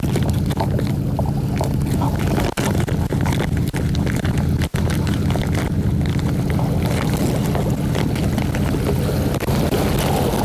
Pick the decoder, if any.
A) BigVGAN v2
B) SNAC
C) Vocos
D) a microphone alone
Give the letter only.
D